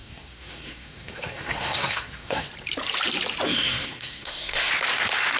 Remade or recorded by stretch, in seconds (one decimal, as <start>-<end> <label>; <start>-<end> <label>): 0.0-2.5 remade; 2.5-3.5 recorded; 3.5-4.7 remade; 4.7-5.4 recorded